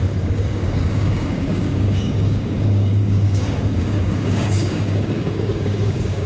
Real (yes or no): no